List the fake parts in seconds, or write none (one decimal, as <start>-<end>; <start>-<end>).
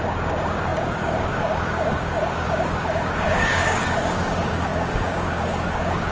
0.0-6.1